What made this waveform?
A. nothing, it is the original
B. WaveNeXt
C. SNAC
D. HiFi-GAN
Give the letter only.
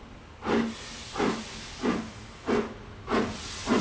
A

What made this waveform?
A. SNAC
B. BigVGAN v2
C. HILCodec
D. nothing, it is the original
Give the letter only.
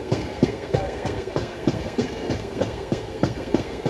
A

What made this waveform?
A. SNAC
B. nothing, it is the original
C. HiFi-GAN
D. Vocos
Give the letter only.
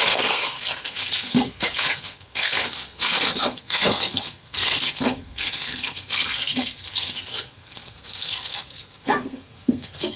A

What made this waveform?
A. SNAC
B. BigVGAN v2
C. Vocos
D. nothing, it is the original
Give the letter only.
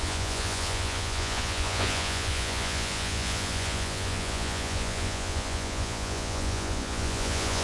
C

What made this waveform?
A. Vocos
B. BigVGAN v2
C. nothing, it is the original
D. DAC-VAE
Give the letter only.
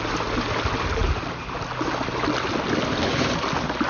C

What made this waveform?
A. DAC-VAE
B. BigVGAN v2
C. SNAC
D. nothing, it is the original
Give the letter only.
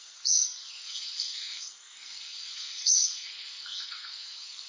C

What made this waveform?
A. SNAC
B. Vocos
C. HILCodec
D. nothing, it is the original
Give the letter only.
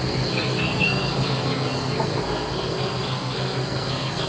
A